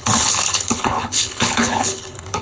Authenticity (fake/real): fake